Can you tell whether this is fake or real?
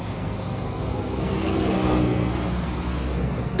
fake